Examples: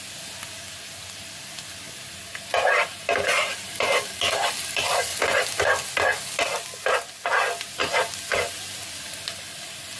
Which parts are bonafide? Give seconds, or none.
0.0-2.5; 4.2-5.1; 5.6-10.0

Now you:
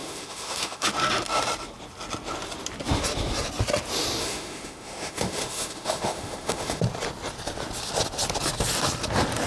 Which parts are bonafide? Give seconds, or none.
0.9-4.2; 6.8-9.5

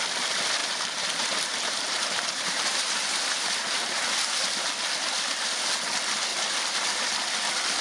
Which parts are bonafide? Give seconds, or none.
0.0-0.6; 4.0-6.3; 6.8-7.8

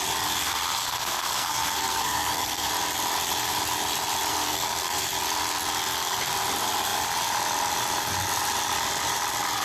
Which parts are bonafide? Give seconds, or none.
0.0-0.4; 2.7-4.3; 5.1-9.6

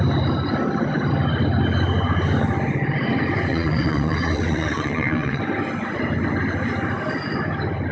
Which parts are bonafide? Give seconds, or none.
0.0-3.5; 5.4-7.9

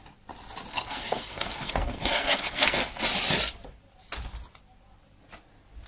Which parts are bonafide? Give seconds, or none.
0.0-0.7; 2.9-5.9

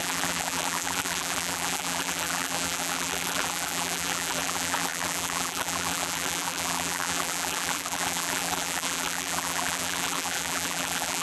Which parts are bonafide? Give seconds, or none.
none